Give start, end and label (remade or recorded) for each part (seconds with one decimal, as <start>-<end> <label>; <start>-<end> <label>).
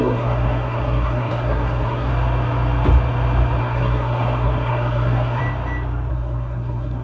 0.0-2.1 remade; 2.1-3.6 recorded; 3.6-5.4 remade; 5.4-6.1 recorded; 6.1-7.0 remade